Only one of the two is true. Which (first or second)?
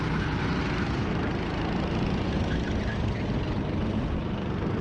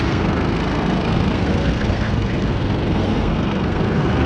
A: first